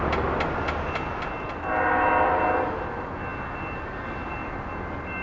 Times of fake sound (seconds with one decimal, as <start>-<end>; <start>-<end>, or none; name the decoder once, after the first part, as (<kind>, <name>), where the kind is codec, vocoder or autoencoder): none